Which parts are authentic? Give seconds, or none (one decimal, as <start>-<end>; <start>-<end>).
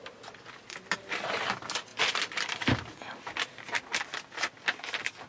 0.0-5.3